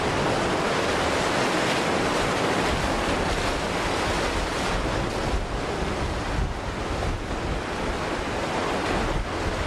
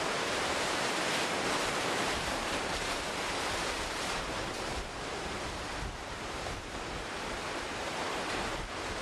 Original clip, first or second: first